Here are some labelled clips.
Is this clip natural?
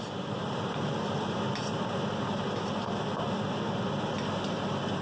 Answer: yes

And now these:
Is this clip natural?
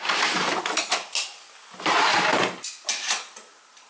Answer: yes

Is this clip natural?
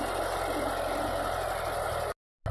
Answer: yes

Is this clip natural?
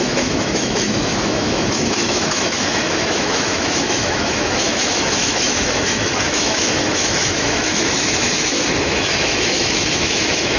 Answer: no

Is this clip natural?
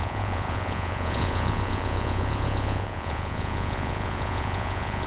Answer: no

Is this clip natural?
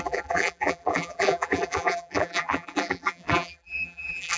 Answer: no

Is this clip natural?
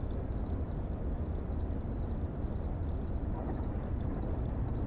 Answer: yes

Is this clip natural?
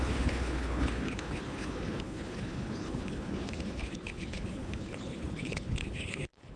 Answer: no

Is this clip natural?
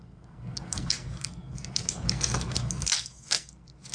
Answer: no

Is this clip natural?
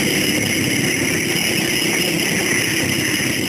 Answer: yes